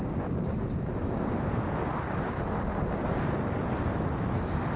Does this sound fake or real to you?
real